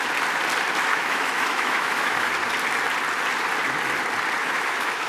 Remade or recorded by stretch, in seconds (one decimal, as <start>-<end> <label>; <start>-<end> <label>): 0.0-0.9 recorded; 0.9-2.3 remade; 2.3-4.4 recorded; 4.4-5.1 remade